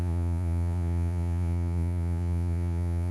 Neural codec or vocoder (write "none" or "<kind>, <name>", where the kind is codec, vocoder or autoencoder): vocoder, Vocos